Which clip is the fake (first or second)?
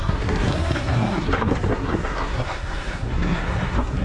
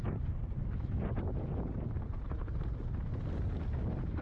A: first